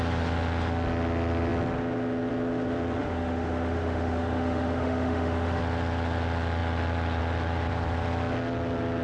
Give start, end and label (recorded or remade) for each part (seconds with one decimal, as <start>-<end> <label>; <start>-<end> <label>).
0.0-3.0 recorded; 3.0-5.6 remade; 5.6-9.0 recorded